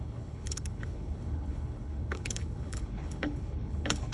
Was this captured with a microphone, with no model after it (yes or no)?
no